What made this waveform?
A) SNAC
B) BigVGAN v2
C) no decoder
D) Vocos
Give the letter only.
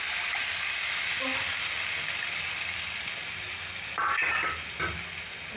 C